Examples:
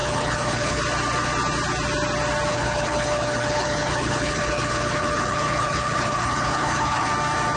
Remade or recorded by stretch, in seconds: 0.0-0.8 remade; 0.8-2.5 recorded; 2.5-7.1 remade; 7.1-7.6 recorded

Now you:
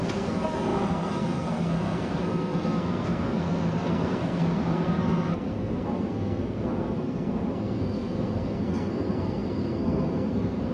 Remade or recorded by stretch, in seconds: 0.0-10.7 remade

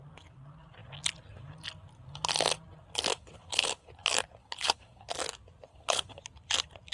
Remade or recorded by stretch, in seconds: 0.0-3.1 recorded; 3.1-3.9 remade; 3.9-4.4 recorded; 4.4-5.1 remade; 5.1-5.7 recorded; 5.7-6.2 remade; 6.2-6.9 recorded

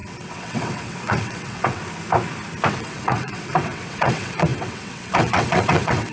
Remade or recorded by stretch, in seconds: 0.0-1.8 remade; 1.8-2.7 recorded; 2.7-6.1 remade

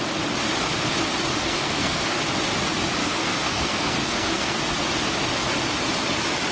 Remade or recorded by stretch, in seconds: 0.0-1.4 recorded; 1.4-2.2 remade; 2.2-3.0 recorded; 3.0-4.6 remade; 4.6-6.5 recorded